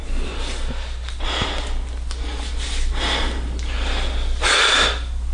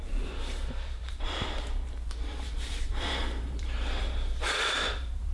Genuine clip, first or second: first